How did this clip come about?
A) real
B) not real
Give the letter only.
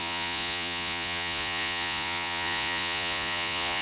B